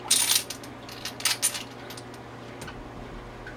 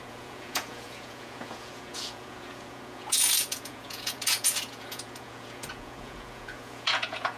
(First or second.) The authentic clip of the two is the first